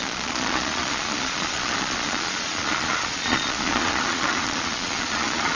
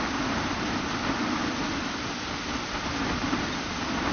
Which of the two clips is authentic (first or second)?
second